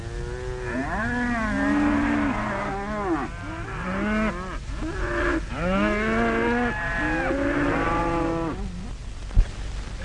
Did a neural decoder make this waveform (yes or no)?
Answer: no